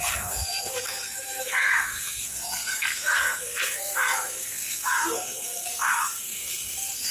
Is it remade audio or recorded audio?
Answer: remade